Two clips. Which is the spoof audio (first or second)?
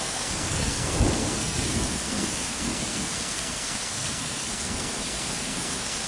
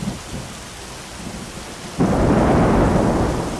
first